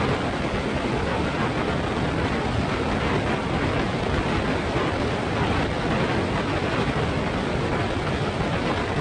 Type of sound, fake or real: real